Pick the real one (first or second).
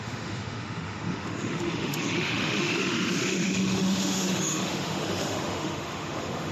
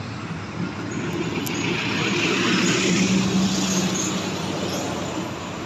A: second